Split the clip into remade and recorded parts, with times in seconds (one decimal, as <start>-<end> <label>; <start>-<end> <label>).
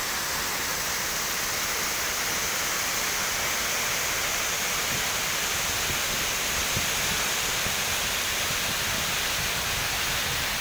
0.0-10.6 recorded